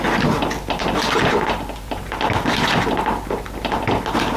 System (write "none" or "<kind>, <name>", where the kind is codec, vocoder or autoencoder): none